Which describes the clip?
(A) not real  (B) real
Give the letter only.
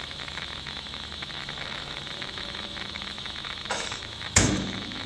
A